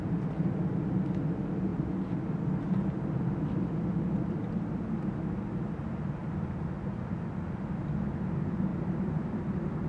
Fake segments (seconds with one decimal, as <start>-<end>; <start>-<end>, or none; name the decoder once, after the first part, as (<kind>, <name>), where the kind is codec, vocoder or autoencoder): 1.7-4.8 (vocoder, BigVGAN v2); 8.7-9.9

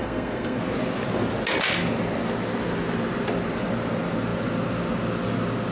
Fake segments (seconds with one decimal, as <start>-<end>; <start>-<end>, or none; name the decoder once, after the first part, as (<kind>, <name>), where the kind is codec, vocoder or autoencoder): 0.0-0.6 (codec, SNAC)

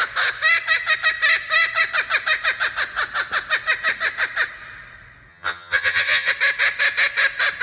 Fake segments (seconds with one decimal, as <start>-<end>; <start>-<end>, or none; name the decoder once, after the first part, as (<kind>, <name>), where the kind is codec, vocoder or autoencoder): 5.3-6.3 (vocoder, HiFi-GAN)

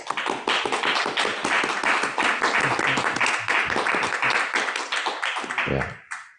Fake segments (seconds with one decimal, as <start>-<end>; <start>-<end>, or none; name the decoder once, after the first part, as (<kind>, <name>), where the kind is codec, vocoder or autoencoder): none

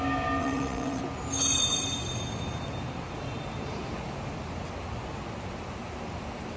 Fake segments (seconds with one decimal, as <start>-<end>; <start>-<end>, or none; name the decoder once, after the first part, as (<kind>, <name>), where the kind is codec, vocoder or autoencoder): 0.4-1.0 (vocoder, WaveNeXt)

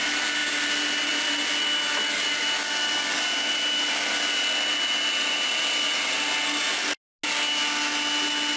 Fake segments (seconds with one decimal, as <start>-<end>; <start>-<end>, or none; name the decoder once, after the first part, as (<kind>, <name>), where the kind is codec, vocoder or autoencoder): none

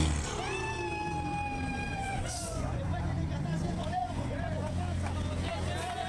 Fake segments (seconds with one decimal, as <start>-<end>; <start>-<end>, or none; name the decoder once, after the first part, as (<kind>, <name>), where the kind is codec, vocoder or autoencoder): 1.9-4.7 (vocoder, Vocos)